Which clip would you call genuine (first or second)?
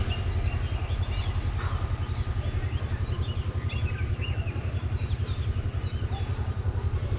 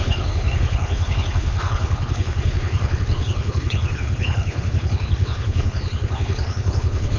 first